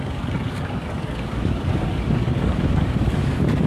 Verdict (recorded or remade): remade